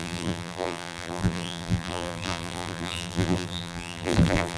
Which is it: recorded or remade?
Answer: remade